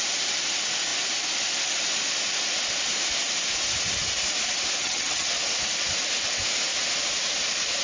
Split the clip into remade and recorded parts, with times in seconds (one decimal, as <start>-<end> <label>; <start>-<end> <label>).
0.0-4.8 recorded; 4.8-5.3 remade; 5.3-7.8 recorded